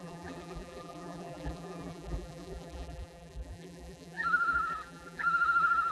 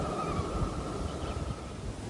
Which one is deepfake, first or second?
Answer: first